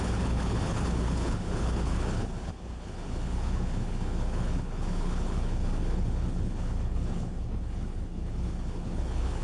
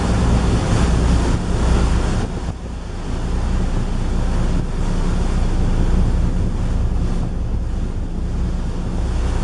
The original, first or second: second